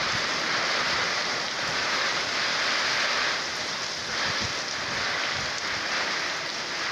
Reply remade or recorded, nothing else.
recorded